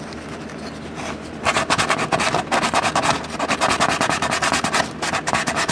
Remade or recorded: recorded